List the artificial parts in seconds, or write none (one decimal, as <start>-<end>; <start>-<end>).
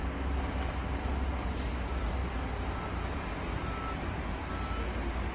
none